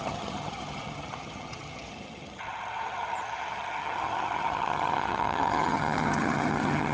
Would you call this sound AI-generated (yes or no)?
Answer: yes